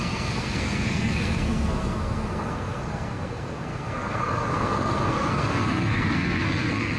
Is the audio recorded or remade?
remade